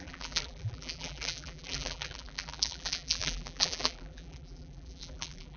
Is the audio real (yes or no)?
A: no